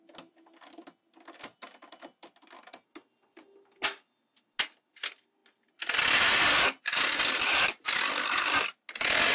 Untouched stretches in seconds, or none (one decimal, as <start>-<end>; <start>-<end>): 0.0-9.3